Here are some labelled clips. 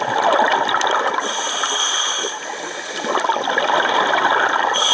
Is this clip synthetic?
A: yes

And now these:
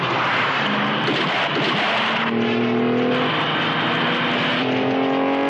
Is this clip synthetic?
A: no